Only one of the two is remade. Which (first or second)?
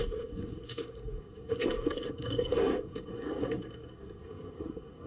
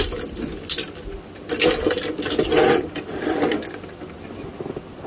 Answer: first